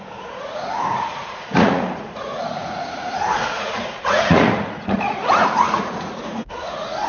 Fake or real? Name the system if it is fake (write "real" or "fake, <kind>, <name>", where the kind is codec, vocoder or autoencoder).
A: fake, vocoder, Vocos